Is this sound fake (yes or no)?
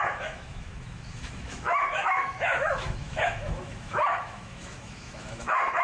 yes